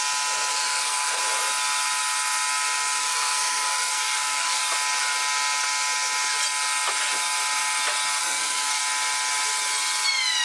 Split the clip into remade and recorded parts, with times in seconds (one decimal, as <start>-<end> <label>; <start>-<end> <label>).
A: 0.0-0.5 recorded; 0.5-1.2 remade; 1.2-3.0 recorded; 3.0-4.6 remade; 4.6-8.2 recorded; 8.2-8.8 remade; 8.8-10.4 recorded